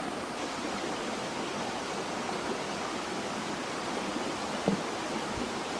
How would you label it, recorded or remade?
remade